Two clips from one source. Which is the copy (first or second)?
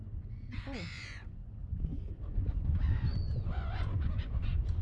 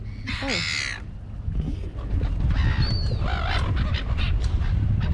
first